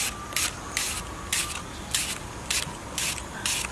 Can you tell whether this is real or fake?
real